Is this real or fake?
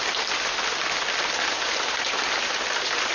fake